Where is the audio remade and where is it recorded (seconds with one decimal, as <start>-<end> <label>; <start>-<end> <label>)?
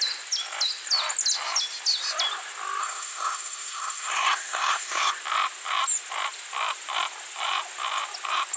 0.0-2.8 recorded; 2.8-5.1 remade; 5.1-8.6 recorded